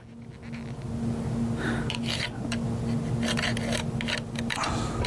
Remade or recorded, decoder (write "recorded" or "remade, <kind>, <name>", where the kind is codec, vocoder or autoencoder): recorded